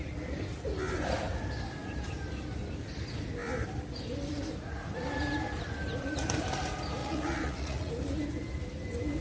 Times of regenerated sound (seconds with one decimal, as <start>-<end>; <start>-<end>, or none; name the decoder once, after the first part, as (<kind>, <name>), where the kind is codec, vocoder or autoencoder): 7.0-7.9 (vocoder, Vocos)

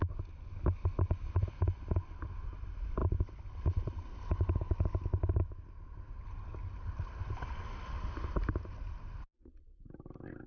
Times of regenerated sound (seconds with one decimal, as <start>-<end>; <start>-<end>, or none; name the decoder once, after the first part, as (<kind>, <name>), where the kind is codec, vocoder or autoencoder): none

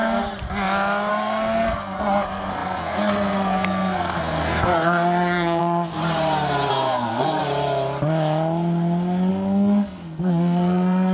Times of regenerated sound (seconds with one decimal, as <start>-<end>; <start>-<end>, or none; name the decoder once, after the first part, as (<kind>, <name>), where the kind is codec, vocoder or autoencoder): 1.1-6.0 (codec, SNAC); 6.7-7.4; 9.3-11.1

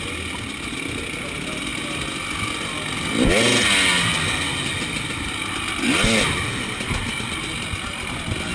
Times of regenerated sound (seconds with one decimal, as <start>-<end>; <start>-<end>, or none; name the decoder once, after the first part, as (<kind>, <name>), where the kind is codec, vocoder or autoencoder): none